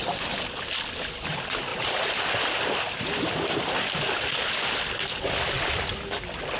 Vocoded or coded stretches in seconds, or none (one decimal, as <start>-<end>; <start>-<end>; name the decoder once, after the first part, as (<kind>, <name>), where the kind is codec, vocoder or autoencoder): 1.7-5.7 (vocoder, BigVGAN v2)